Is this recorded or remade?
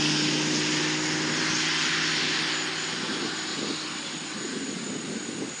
recorded